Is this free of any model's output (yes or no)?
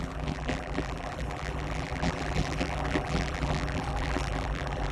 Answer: no